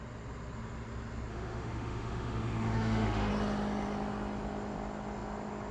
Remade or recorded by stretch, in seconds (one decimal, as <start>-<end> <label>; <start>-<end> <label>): 0.0-1.3 recorded; 1.3-3.3 remade; 3.3-5.7 recorded